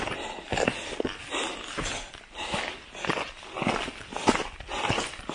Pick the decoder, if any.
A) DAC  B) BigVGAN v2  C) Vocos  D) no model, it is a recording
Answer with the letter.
D